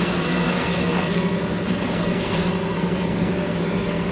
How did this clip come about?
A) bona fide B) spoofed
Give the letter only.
B